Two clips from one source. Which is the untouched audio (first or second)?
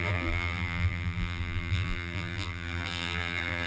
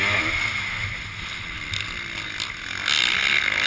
second